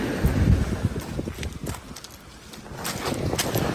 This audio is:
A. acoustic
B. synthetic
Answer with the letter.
A